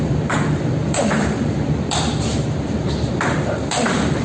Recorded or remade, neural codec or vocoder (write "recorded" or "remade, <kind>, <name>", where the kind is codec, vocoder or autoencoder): remade, vocoder, BigVGAN v2